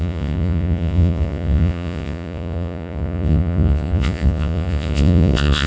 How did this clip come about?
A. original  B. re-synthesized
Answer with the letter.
B